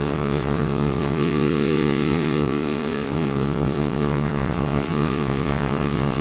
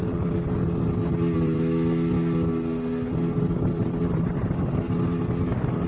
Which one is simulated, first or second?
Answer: first